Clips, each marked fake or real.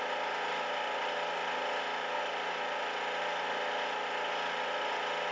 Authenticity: real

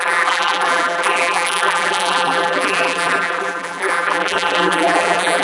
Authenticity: fake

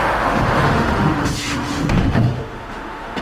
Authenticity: fake